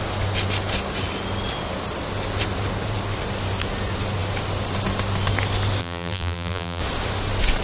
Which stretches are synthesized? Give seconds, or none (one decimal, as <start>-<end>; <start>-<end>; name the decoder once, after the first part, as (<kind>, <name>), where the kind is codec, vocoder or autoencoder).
5.8-6.8 (vocoder, BigVGAN v2)